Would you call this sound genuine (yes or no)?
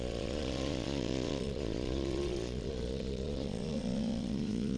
no